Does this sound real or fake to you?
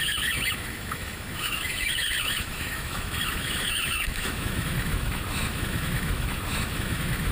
fake